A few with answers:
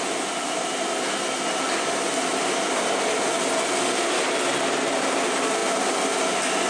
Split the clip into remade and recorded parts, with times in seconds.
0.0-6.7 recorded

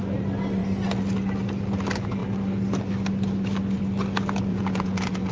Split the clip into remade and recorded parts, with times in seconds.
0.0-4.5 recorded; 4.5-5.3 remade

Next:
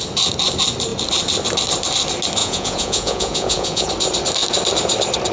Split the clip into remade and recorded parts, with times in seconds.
0.0-2.4 recorded; 2.4-3.9 remade; 3.9-5.3 recorded

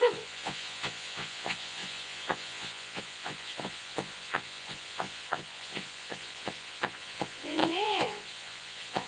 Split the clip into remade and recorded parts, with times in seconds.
0.0-9.1 remade

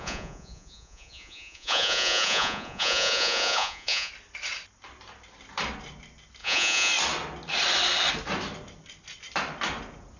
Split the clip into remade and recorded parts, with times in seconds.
0.0-4.1 remade; 4.1-6.4 recorded; 6.4-6.9 remade; 6.9-10.2 recorded

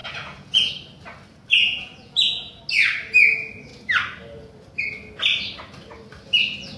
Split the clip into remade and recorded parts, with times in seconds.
0.0-0.7 remade; 0.7-1.3 recorded; 1.3-2.6 remade; 2.6-6.8 recorded

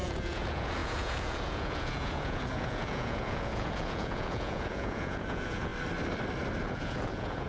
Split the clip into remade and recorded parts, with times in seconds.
0.0-5.7 remade; 5.7-6.6 recorded; 6.6-7.5 remade